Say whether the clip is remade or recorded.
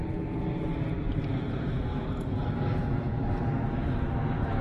recorded